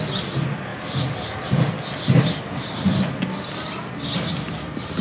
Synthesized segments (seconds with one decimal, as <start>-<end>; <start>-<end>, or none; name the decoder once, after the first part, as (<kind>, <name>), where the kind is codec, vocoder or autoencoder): none